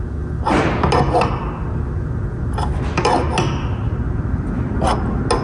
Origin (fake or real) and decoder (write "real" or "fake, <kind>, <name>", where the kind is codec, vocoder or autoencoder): real